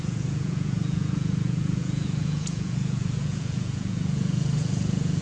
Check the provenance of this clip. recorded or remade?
remade